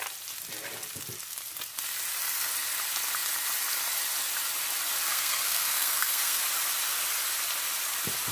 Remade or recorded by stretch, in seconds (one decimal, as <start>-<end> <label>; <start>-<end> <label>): 0.0-5.1 recorded; 5.1-6.4 remade; 6.4-8.3 recorded